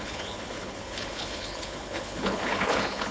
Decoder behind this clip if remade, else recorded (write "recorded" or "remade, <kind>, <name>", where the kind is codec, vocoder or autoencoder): remade, codec, HILCodec